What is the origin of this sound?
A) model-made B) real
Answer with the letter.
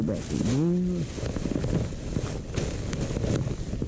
B